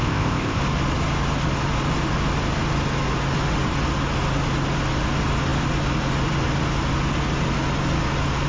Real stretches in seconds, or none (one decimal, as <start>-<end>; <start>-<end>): 0.6-8.5